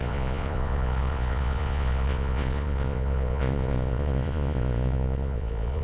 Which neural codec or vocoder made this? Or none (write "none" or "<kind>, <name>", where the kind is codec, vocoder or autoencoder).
vocoder, Vocos